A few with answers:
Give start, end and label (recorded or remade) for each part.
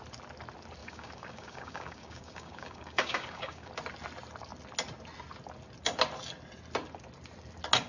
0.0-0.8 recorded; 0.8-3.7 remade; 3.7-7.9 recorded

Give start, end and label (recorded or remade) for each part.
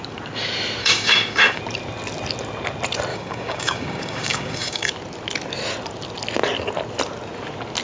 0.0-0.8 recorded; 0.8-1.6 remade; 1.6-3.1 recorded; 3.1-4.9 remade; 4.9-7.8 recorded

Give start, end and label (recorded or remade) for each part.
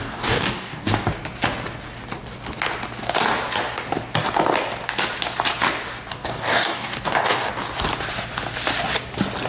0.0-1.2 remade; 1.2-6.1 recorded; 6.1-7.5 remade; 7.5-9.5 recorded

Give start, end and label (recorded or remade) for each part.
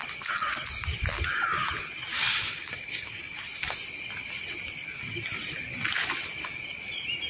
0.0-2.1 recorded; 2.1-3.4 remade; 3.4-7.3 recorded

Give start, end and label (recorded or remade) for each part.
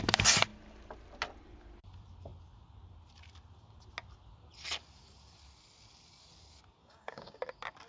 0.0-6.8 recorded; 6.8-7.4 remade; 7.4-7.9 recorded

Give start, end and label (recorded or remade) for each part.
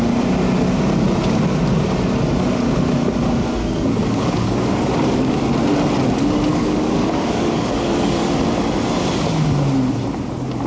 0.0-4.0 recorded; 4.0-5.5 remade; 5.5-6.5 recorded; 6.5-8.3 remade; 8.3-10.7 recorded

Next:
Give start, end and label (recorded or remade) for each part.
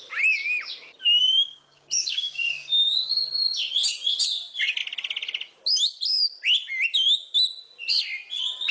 0.0-1.2 recorded; 1.2-3.2 remade; 3.2-8.7 recorded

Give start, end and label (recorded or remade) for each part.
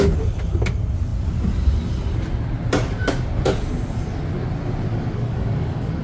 0.0-4.9 recorded; 4.9-6.0 remade